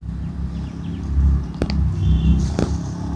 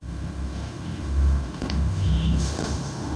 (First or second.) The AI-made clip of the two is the second